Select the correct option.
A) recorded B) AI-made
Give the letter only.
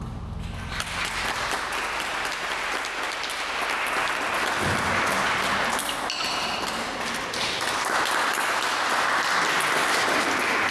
A